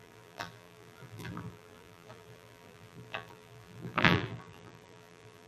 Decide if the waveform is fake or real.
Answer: fake